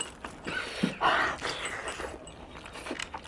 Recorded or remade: recorded